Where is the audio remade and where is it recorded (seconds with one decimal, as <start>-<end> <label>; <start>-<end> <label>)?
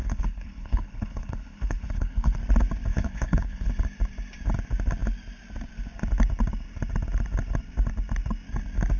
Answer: 0.0-2.4 remade; 2.4-2.9 recorded; 2.9-3.7 remade; 3.7-9.0 recorded